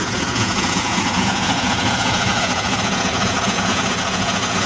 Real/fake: fake